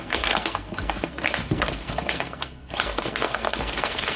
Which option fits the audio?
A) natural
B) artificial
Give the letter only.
B